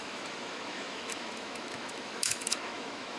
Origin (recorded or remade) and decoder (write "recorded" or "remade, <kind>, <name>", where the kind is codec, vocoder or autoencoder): remade, autoencoder, DAC-VAE